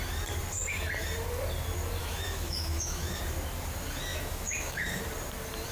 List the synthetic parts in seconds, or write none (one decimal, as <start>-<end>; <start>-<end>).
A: 2.0-3.2; 4.1-5.0